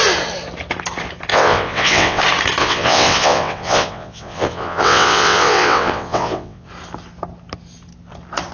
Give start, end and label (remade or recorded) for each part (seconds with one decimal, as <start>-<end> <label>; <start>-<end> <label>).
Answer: 0.0-1.3 recorded; 1.3-2.2 remade; 2.2-2.6 recorded; 2.6-6.7 remade; 6.7-8.5 recorded